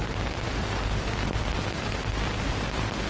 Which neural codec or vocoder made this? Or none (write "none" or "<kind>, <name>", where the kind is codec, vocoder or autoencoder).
vocoder, BigVGAN v2